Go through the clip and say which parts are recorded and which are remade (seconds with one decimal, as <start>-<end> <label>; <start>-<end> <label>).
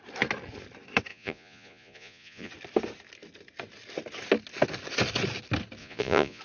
0.0-1.1 recorded; 1.1-2.5 remade; 2.5-5.8 recorded; 5.8-6.4 remade